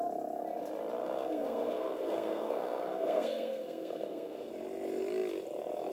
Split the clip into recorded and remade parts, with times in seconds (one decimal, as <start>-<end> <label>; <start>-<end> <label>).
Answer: 0.0-1.0 recorded; 1.0-4.5 remade; 4.5-5.9 recorded